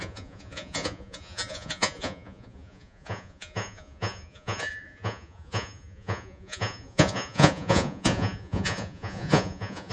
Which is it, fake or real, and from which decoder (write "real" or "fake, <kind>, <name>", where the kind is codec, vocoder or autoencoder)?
fake, vocoder, Vocos